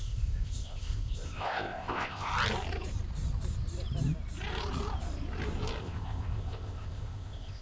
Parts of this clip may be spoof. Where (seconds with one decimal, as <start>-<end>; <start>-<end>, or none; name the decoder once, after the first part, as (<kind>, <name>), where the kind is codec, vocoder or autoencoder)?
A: 0.0-2.3 (codec, ZipCodec); 5.8-7.6